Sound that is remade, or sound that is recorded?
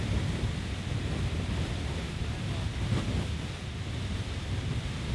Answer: recorded